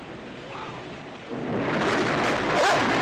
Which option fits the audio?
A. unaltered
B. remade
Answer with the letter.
A